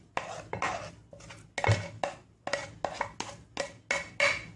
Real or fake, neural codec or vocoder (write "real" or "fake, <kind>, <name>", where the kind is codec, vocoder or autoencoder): real